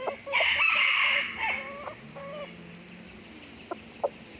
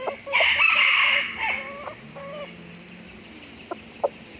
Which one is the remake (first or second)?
second